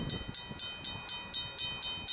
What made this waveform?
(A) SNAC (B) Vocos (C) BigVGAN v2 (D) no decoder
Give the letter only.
D